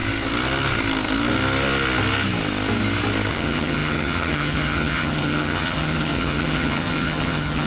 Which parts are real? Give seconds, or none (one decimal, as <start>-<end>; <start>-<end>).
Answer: 0.0-3.3